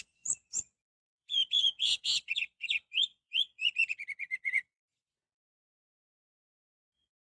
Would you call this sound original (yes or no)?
no